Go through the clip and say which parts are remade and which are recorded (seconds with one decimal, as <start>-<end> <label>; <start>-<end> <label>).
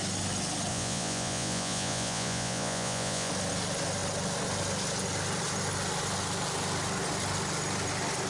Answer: 0.0-0.7 recorded; 0.7-3.3 remade; 3.3-8.3 recorded